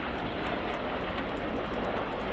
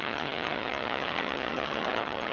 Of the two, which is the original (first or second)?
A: first